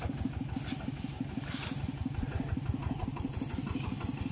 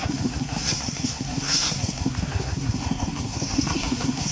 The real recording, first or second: first